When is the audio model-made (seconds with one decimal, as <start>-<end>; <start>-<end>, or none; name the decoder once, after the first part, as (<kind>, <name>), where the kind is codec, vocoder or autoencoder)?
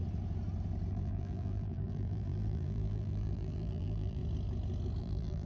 0.9-4.2 (vocoder, BigVGAN v2); 5.0-5.5